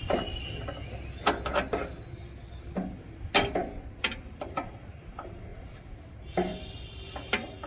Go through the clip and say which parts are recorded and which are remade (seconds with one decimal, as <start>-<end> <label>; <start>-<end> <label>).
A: 0.0-7.7 recorded